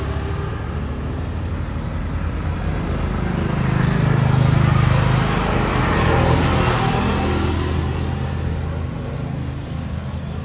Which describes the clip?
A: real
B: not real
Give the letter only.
A